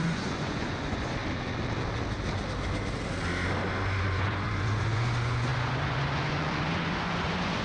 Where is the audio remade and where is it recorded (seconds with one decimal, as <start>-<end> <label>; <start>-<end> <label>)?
0.0-1.2 remade; 1.2-4.0 recorded; 4.0-7.6 remade